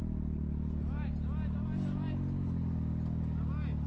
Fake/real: real